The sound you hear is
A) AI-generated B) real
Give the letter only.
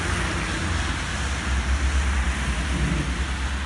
B